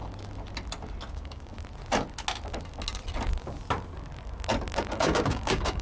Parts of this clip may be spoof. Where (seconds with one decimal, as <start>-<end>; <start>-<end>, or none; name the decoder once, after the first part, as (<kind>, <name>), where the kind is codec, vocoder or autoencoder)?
1.1-1.5 (codec, DAC); 5.0-5.8